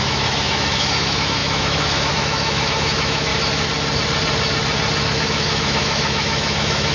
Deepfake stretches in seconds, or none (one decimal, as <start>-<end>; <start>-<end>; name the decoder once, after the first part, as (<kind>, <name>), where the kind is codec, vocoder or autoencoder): 0.0-3.3 (autoencoder, DAC-VAE); 5.0-6.9